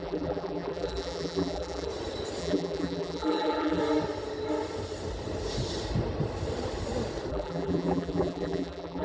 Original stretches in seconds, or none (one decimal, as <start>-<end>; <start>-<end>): 1.9-2.4; 3.8-7.3